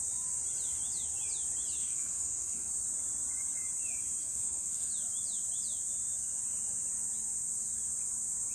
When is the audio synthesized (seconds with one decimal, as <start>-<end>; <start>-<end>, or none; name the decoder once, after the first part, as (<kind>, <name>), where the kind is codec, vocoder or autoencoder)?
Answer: 1.8-2.7 (codec, SNAC); 4.2-4.9